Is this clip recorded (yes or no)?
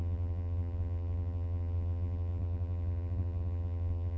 no